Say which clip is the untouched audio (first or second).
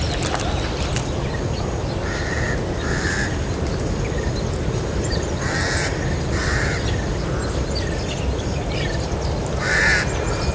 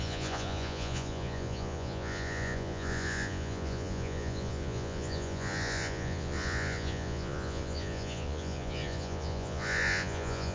first